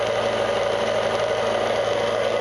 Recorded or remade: recorded